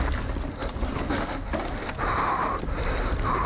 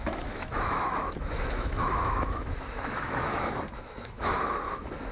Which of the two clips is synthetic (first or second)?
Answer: second